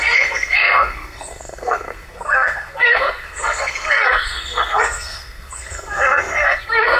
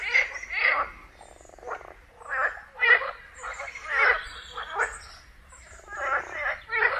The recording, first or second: second